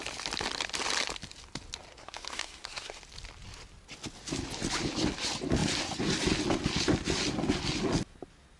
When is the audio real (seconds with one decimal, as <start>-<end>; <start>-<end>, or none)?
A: 0.0-1.9; 3.0-8.6